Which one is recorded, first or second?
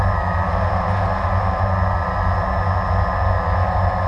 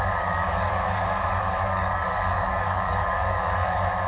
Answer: first